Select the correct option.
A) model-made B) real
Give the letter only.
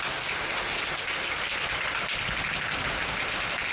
B